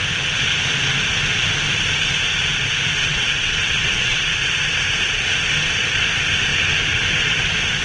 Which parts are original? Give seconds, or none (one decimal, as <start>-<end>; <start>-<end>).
0.0-3.0; 4.2-7.8